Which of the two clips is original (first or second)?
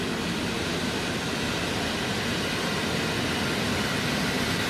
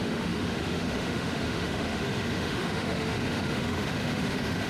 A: first